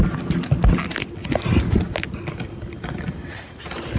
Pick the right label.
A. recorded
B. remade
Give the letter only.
A